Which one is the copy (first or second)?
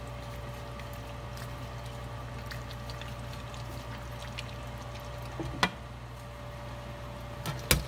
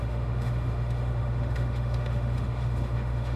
second